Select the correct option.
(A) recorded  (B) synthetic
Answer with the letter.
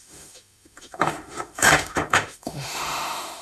B